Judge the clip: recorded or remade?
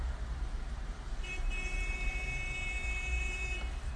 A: remade